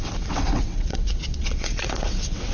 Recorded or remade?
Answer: remade